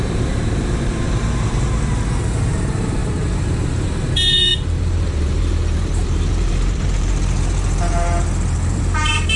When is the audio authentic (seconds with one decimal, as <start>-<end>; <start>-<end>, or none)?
none

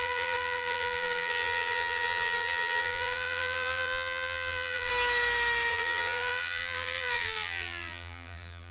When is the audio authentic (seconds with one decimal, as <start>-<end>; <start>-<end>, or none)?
4.9-5.7

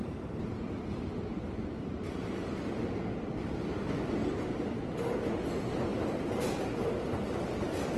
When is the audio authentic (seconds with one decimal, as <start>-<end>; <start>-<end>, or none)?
2.9-5.9; 6.6-8.0

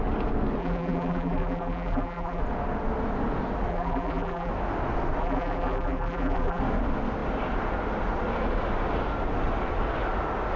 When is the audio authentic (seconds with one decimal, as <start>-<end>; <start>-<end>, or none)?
0.0-0.6; 2.4-3.7; 4.5-5.2; 6.6-10.6

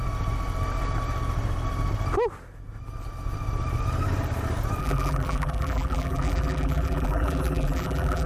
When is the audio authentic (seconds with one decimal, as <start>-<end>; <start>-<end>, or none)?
0.0-4.8

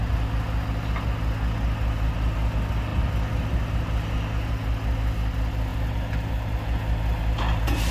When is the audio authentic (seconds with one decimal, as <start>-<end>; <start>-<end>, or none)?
0.0-7.9

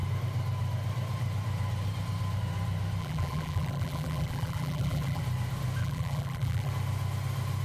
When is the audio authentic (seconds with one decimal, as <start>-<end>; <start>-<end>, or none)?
0.0-3.0; 5.2-5.8; 6.7-7.6